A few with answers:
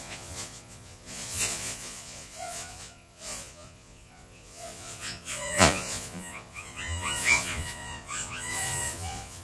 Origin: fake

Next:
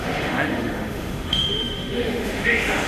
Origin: fake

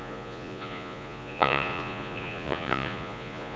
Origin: fake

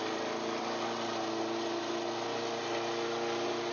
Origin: real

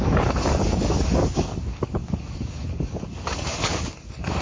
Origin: fake